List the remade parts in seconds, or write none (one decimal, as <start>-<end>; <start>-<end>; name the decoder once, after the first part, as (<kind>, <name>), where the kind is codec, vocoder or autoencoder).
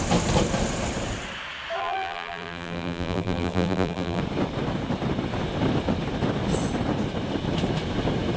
1.8-4.2 (vocoder, BigVGAN v2)